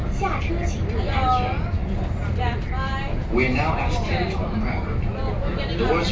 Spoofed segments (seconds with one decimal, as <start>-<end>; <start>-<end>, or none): 0.0-0.5